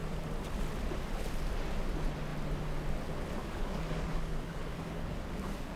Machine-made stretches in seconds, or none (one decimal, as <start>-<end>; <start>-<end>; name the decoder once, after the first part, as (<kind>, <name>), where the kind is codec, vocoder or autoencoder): 3.4-5.8 (codec, DAC)